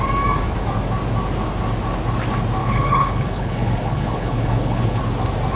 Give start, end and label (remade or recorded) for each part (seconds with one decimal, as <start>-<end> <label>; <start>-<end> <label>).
0.0-2.6 recorded; 2.6-5.0 remade; 5.0-5.6 recorded